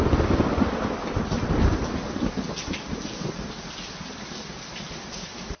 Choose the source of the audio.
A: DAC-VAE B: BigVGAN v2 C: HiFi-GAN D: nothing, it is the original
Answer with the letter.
D